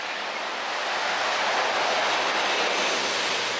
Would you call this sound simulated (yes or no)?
no